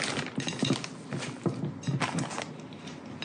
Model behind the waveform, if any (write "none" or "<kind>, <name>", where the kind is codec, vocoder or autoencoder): none